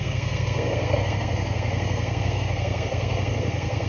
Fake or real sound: fake